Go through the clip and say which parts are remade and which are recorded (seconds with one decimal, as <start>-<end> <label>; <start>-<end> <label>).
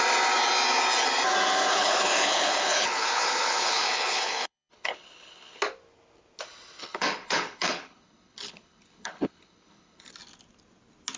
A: 0.0-1.7 recorded; 1.7-5.6 remade; 5.6-6.8 recorded; 6.8-10.1 remade; 10.1-11.2 recorded